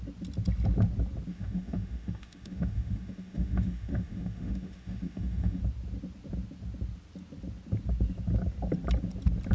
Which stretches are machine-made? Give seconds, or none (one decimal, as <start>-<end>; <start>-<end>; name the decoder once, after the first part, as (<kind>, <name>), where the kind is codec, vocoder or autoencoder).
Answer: 1.3-5.6 (autoencoder, DAC-VAE)